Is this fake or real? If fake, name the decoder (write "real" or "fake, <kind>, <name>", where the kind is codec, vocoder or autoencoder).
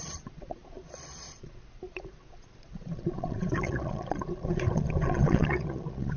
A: fake, vocoder, Vocos